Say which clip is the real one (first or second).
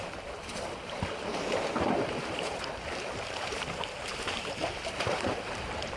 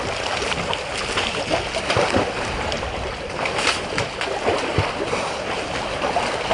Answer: second